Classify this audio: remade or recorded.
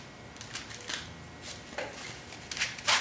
recorded